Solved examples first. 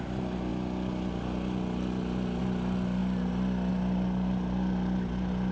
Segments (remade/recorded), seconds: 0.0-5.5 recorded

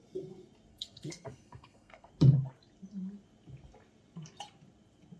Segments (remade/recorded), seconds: 0.0-0.7 recorded; 0.7-2.1 remade; 2.1-5.2 recorded

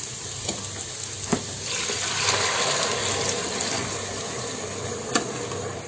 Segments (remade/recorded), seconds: 0.0-3.0 remade; 3.0-5.5 recorded; 5.5-5.9 remade

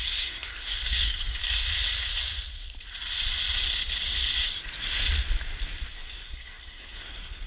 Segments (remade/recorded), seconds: 0.0-1.4 remade; 1.4-5.9 recorded; 5.9-7.5 remade

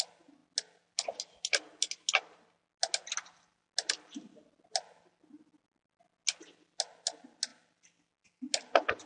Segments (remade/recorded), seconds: 0.0-9.1 recorded

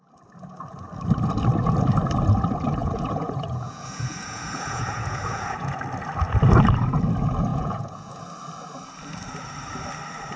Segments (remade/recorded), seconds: 0.0-2.8 recorded; 2.8-5.8 remade; 5.8-7.5 recorded; 7.5-8.2 remade; 8.2-10.4 recorded